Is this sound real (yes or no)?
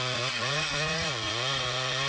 no